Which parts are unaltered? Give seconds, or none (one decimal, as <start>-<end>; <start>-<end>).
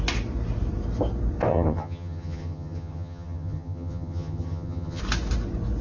0.0-1.5; 5.0-5.8